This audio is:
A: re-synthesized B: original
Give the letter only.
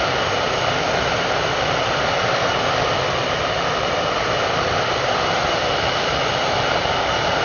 B